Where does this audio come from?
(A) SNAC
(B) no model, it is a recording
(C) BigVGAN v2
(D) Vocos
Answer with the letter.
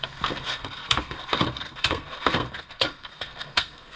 A